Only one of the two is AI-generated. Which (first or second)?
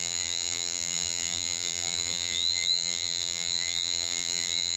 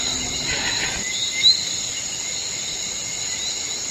first